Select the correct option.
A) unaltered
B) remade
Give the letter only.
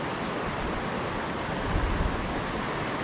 A